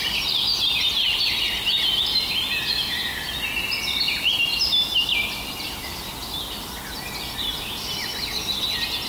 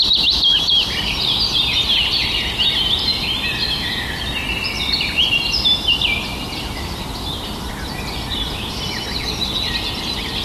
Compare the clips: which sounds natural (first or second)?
first